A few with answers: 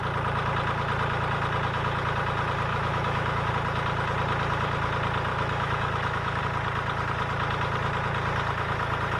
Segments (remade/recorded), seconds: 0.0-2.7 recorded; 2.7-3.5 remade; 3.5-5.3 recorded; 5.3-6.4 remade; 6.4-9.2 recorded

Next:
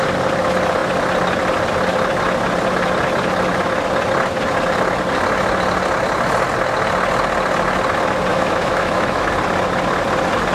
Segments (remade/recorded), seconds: 0.0-8.3 recorded; 8.3-9.3 remade; 9.3-10.5 recorded

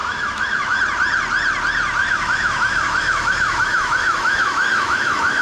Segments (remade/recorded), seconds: 0.0-0.8 remade; 0.8-2.0 recorded; 2.0-5.4 remade